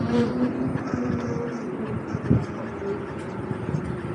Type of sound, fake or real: real